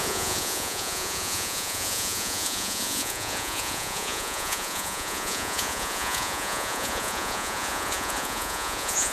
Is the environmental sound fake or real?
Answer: fake